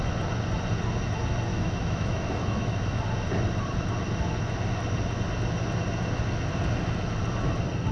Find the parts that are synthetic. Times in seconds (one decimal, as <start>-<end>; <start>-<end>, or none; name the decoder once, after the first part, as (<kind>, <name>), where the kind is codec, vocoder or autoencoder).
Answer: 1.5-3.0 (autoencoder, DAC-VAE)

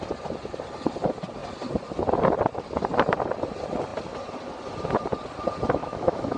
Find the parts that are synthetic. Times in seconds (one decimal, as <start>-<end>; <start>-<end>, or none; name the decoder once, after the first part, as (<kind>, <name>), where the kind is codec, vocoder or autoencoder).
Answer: 5.8-6.4 (autoencoder, DAC-VAE)

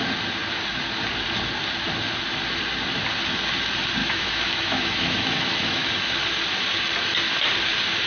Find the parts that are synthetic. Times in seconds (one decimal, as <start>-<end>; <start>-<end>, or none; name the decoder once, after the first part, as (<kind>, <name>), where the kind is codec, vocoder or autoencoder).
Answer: 4.0-5.9 (autoencoder, DAC-VAE)